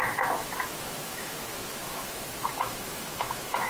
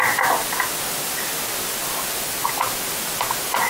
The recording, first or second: second